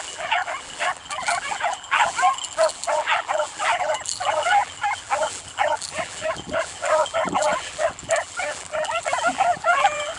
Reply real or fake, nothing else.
fake